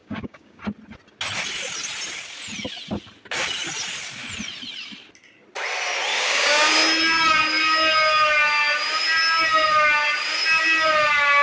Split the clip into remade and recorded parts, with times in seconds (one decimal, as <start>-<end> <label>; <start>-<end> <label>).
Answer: 0.0-0.6 remade; 0.6-6.1 recorded; 6.1-6.7 remade; 6.7-11.4 recorded